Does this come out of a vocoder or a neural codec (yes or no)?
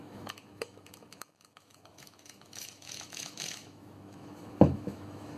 yes